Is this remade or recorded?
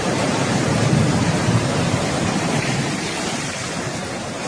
remade